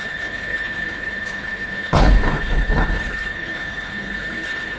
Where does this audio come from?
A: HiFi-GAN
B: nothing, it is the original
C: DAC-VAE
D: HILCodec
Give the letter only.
D